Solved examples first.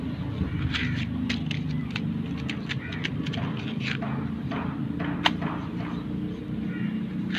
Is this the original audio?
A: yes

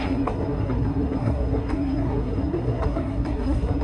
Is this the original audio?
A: no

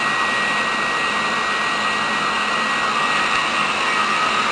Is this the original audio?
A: yes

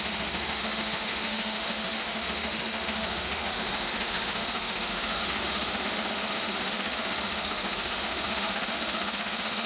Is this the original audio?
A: no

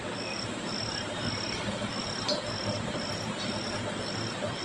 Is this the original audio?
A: yes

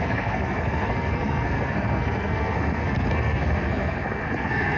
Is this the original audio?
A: no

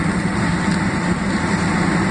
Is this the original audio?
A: yes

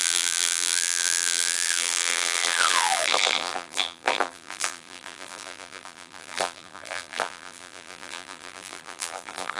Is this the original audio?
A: no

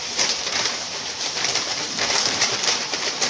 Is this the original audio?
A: no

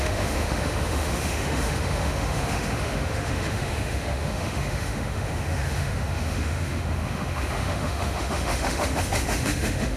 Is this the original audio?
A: no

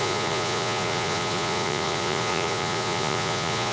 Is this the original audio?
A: no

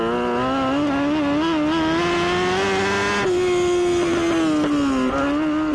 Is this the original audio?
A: yes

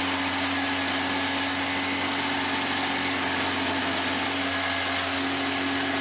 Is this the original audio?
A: yes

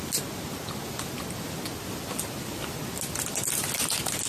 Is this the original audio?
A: yes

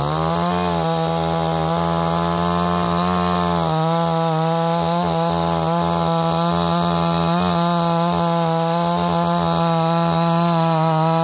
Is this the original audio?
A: yes